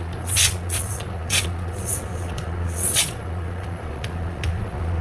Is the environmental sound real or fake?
fake